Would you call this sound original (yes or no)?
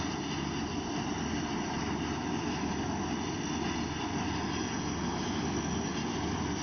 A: yes